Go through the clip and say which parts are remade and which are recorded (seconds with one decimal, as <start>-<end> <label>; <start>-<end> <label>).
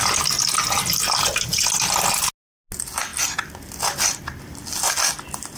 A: 0.0-5.6 recorded